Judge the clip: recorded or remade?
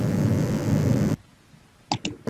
recorded